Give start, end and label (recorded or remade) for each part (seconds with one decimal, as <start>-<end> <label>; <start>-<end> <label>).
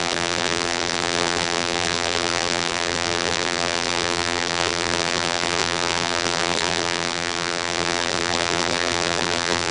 0.0-9.7 remade